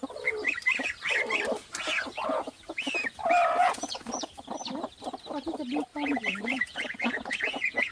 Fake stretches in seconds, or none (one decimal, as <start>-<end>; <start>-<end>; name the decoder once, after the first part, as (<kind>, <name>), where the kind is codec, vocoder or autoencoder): 1.9-2.9 (vocoder, Vocos); 3.6-4.5; 5.9-7.9

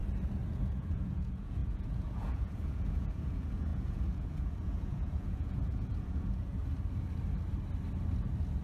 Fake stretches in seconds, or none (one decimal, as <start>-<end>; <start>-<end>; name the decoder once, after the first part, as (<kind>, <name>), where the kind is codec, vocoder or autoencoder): 0.5-6.6 (vocoder, Vocos)